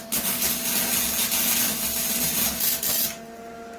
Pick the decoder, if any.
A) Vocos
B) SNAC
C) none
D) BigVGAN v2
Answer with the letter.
C